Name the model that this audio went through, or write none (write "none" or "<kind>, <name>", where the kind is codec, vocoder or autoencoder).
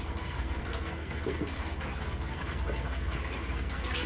codec, SNAC